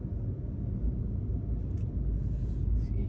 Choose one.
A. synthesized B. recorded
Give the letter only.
B